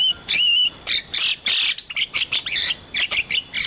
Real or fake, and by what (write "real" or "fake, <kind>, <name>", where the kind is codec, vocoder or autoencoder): fake, vocoder, BigVGAN v2